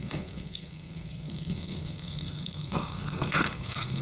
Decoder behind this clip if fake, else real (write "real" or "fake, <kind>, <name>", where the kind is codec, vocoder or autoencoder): fake, codec, SNAC